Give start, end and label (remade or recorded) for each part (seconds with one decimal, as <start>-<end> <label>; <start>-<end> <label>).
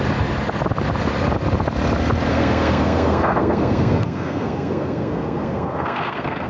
0.0-2.3 recorded; 2.3-6.5 remade